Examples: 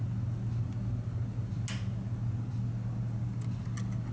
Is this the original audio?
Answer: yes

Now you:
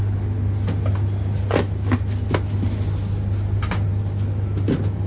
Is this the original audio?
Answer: yes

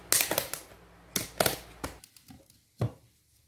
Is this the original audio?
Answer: yes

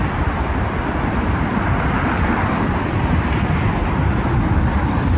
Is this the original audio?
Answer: no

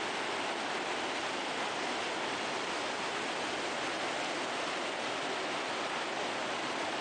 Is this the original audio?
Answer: yes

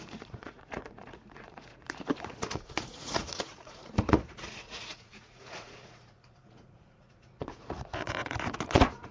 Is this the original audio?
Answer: no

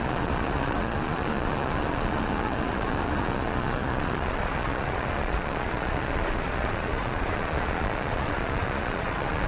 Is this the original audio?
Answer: no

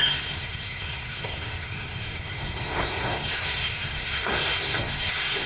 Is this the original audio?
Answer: no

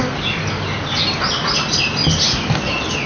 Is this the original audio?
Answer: yes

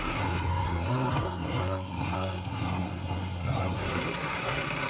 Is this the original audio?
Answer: no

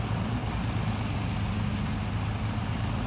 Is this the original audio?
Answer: yes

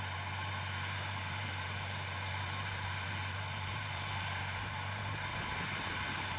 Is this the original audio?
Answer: no